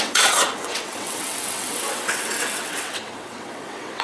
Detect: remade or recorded remade